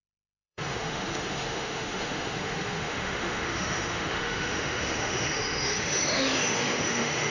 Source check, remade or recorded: remade